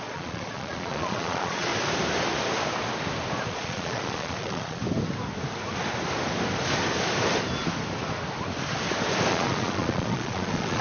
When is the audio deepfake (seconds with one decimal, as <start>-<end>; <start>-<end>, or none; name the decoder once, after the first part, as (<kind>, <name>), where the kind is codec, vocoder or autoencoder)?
0.0-1.7 (vocoder, Vocos); 3.5-4.8; 9.3-10.8